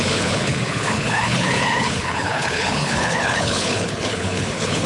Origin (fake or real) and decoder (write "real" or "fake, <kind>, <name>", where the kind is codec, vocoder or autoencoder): fake, codec, HILCodec